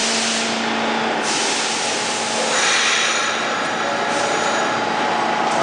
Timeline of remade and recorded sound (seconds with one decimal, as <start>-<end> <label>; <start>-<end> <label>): 0.0-5.6 recorded